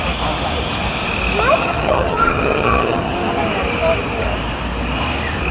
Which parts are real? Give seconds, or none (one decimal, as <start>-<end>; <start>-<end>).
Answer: 0.0-1.6; 3.1-5.5